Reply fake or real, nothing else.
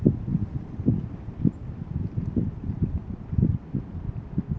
real